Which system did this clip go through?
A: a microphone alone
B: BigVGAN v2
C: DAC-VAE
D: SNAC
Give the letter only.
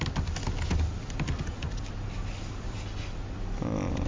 A